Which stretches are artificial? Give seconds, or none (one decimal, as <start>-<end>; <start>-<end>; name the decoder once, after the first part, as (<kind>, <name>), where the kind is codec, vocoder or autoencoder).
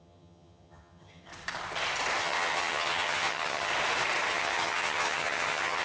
0.0-1.3 (vocoder, HiFi-GAN); 2.2-3.7; 4.3-5.8